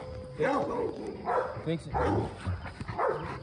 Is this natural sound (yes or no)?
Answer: yes